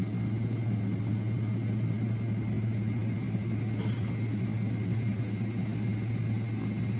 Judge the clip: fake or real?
real